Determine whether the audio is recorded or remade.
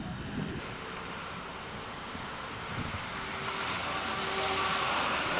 recorded